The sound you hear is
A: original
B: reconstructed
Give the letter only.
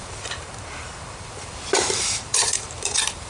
B